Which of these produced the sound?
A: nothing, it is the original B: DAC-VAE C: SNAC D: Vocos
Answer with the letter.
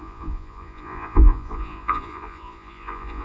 D